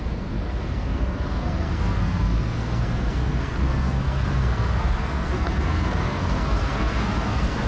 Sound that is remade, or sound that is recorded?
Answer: remade